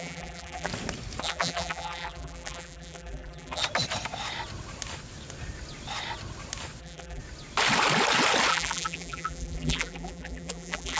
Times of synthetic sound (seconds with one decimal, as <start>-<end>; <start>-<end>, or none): 0.0-0.7; 1.2-3.6; 6.8-7.2; 8.5-11.0